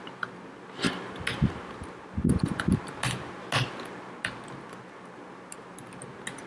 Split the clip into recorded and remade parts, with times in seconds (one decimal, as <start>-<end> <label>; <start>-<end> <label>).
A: 0.0-2.2 recorded; 2.2-2.7 remade; 2.7-6.5 recorded